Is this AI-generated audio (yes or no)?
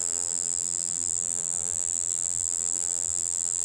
yes